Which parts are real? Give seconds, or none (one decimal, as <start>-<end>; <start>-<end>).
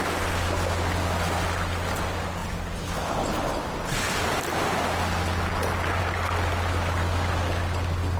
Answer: 0.0-8.2